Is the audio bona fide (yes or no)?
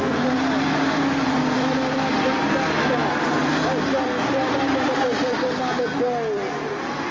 yes